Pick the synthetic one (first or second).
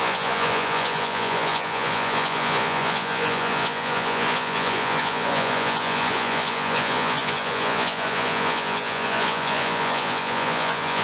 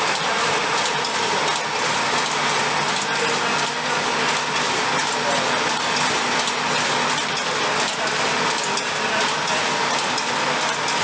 first